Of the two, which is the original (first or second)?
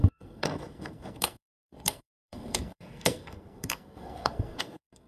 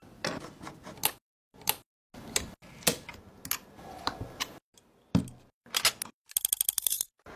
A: second